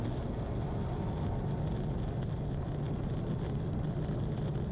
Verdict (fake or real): real